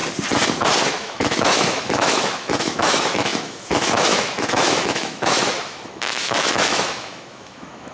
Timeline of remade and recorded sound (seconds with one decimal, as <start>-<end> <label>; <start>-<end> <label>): 0.0-0.9 recorded; 0.9-7.9 remade